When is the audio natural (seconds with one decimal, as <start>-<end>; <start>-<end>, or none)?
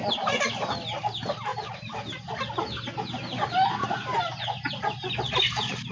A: 0.0-5.9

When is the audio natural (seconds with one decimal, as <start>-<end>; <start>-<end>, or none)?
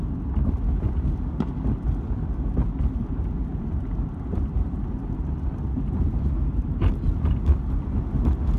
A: 0.0-3.5; 6.9-8.6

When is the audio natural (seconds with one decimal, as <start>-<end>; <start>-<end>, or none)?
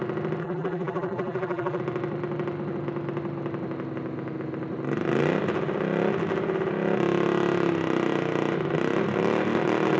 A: 0.0-0.4; 1.8-10.0